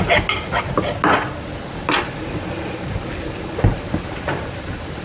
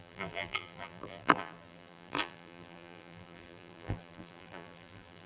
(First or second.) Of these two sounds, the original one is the first